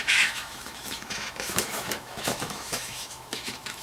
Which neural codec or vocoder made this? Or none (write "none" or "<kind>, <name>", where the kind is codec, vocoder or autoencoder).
autoencoder, DAC-VAE